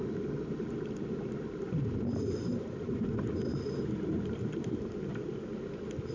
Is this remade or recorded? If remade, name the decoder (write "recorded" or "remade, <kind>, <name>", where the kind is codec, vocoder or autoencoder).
recorded